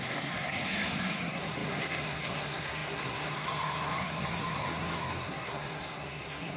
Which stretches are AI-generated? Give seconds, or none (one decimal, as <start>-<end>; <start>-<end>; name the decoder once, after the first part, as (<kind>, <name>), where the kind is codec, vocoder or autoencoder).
0.0-6.6 (codec, SNAC)